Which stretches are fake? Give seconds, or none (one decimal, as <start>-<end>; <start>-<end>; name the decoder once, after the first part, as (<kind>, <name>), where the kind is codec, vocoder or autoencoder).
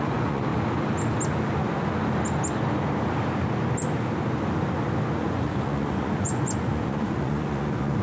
0.0-0.5 (vocoder, Vocos); 5.2-8.0